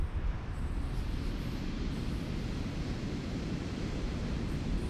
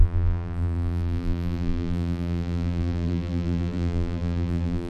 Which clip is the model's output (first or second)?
second